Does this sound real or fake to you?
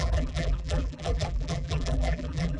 fake